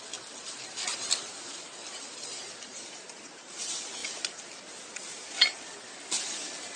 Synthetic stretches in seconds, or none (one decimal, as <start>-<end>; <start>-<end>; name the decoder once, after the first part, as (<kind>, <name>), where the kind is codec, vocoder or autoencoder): 0.9-3.6 (vocoder, BigVGAN v2)